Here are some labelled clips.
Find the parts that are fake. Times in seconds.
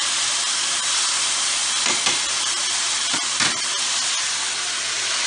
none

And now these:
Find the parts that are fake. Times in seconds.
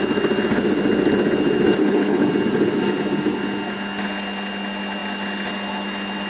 1.8-2.3 (codec, HILCodec)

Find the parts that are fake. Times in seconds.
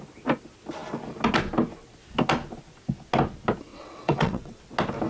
3.7-4.6 (vocoder, WaveNeXt)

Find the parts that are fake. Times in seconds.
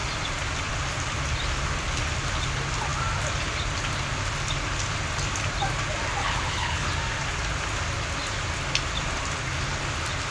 6.2-6.9 (codec, HILCodec)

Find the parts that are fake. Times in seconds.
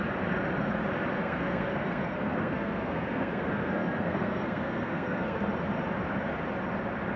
1.2-5.5 (codec, SNAC)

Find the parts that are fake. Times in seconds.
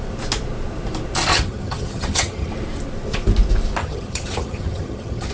1.3-2.5 (vocoder, HiFi-GAN); 3.8-5.3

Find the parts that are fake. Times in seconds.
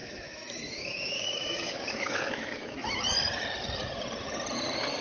0.0-3.0 (autoencoder, DAC-VAE)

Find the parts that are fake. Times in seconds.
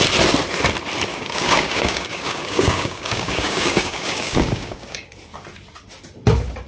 1.1-5.1 (codec, DAC)